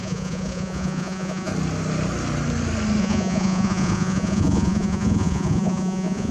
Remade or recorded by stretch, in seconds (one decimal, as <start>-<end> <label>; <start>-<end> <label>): 0.0-1.5 remade; 1.5-3.0 recorded; 3.0-6.3 remade